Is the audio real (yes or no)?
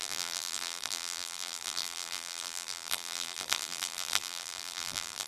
no